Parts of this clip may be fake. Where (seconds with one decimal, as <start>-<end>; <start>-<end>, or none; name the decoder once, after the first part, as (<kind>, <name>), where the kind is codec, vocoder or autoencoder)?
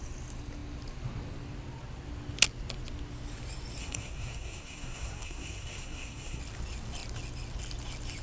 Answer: 3.8-6.4 (codec, SNAC)